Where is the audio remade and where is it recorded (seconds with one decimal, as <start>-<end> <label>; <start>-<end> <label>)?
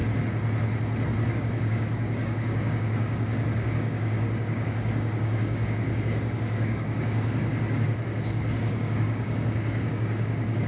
0.0-1.3 recorded; 1.3-10.7 remade